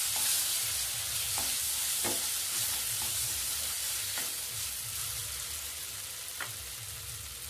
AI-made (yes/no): no